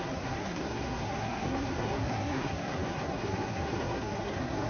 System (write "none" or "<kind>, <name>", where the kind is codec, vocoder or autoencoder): codec, SNAC